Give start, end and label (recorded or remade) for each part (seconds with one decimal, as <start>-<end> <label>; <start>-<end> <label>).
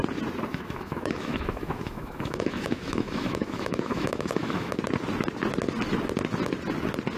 0.0-0.5 recorded; 0.5-4.8 remade; 4.8-7.2 recorded